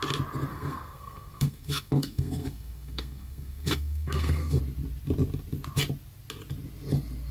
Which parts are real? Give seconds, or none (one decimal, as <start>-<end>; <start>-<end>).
0.0-0.5; 4.6-7.3